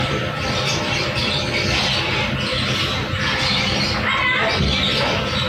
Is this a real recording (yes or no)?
yes